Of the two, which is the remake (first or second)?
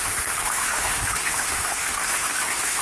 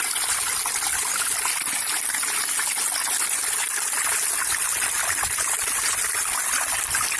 first